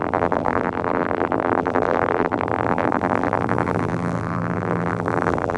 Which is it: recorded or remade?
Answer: remade